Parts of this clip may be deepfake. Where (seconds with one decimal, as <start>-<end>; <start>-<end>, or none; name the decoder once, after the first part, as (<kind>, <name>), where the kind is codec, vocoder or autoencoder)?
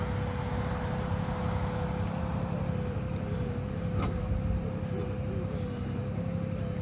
none